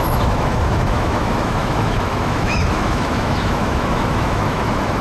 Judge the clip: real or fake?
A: fake